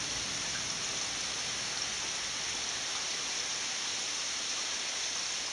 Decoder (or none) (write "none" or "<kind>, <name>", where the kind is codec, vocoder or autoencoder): none